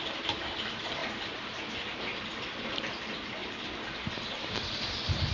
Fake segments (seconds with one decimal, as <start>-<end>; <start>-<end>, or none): 0.0-1.0; 2.2-3.4